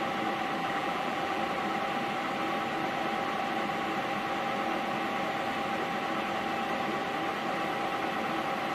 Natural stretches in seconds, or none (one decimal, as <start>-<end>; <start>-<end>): 0.0-0.6; 1.4-8.7